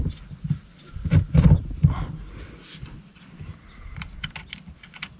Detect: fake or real real